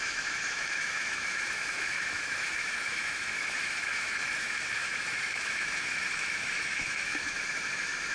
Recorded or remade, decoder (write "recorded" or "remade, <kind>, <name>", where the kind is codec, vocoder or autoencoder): remade, autoencoder, DAC-VAE